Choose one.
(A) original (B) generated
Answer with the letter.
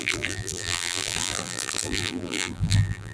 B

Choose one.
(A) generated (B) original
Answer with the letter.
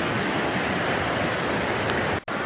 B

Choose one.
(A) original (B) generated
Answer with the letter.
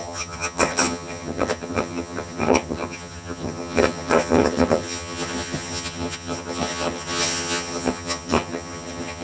B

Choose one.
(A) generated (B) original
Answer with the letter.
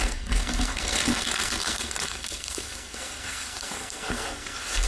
A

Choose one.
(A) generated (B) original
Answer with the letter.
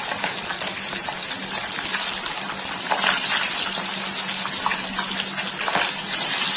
B